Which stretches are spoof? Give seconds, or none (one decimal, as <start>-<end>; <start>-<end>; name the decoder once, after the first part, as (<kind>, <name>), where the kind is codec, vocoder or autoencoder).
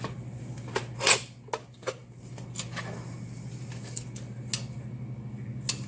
none